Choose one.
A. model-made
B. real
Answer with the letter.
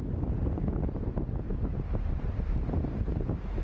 B